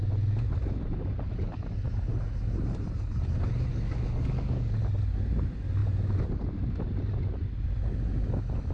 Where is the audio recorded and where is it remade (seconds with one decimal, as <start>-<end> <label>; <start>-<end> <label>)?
0.0-3.7 recorded; 3.7-4.7 remade; 4.7-8.7 recorded